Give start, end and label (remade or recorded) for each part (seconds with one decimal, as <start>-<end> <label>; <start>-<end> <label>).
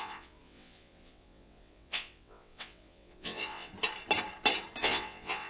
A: 0.0-3.7 remade; 3.7-4.8 recorded; 4.8-5.5 remade